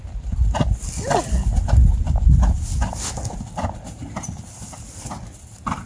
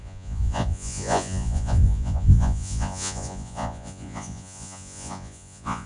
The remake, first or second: second